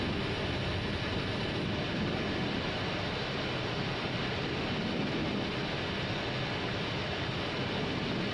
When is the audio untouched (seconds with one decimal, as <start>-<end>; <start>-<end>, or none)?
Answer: 0.0-8.3